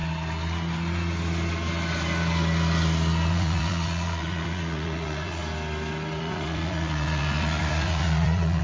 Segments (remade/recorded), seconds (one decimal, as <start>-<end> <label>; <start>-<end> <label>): 0.0-3.3 recorded; 3.3-5.4 remade; 5.4-6.2 recorded; 6.2-8.6 remade